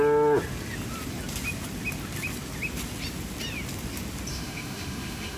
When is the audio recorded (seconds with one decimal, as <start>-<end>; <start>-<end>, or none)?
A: 0.0-4.3